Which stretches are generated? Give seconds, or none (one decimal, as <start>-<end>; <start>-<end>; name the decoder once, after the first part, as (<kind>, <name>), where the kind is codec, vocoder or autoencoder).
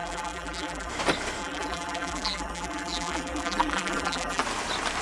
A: 0.0-0.9 (vocoder, BigVGAN v2); 1.4-4.4